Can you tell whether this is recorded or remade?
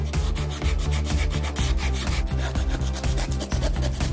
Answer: recorded